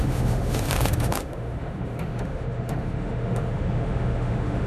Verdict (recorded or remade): remade